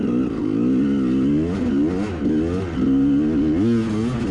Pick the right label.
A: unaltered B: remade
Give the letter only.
A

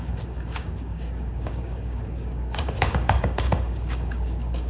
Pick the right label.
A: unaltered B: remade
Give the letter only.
B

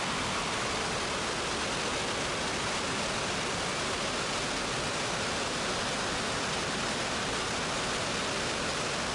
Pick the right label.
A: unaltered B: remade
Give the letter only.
A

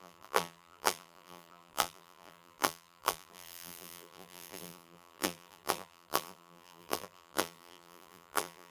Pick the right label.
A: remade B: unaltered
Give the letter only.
A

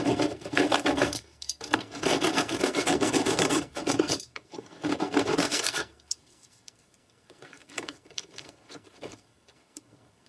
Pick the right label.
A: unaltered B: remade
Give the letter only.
B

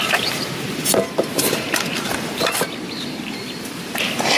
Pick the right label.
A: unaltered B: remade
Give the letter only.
B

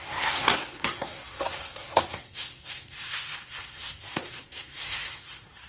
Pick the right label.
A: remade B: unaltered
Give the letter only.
A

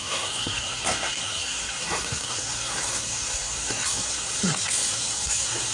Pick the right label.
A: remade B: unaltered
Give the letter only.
A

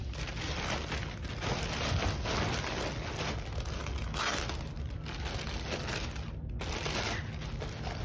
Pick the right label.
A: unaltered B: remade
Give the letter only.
A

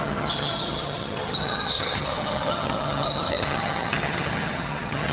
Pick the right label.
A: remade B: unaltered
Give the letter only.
A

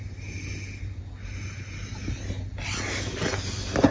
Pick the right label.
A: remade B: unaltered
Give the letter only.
B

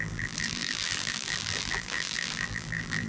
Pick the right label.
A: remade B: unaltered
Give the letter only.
A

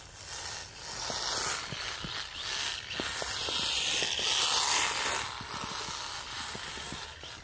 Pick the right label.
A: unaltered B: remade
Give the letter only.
A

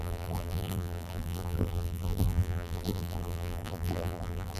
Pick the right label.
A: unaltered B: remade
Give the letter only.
B